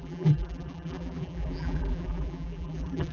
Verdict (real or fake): fake